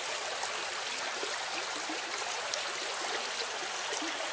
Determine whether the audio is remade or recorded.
recorded